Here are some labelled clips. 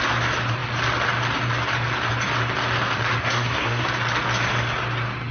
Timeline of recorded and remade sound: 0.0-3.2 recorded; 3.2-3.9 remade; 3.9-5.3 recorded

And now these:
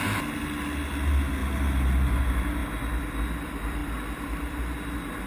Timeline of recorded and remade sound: 0.0-3.8 recorded; 3.8-4.6 remade; 4.6-5.3 recorded

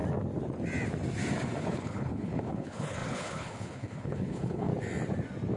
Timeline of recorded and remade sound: 0.0-1.6 recorded; 1.6-4.7 remade; 4.7-5.6 recorded

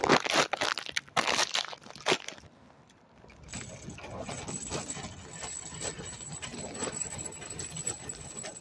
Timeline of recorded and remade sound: 0.0-8.6 recorded

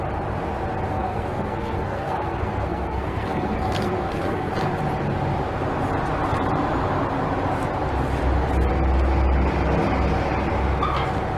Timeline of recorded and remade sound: 0.0-0.9 recorded; 0.9-4.5 remade; 4.5-11.4 recorded

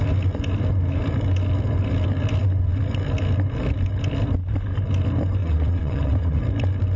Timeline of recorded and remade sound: 0.0-5.4 recorded; 5.4-6.4 remade; 6.4-7.0 recorded